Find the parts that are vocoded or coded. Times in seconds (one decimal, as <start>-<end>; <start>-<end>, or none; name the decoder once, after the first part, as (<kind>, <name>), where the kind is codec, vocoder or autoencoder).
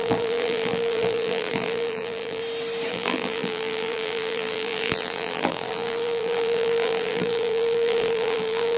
0.0-2.4 (vocoder, BigVGAN v2); 2.9-8.8